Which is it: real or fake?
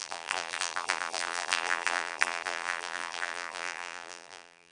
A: fake